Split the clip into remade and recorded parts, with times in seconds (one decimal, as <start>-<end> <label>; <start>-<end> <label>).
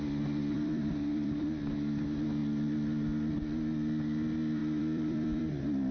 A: 0.0-0.4 recorded; 0.4-1.6 remade; 1.6-4.6 recorded; 4.6-5.4 remade; 5.4-5.9 recorded